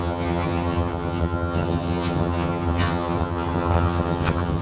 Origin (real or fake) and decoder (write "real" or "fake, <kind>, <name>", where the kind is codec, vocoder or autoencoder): fake, vocoder, HiFi-GAN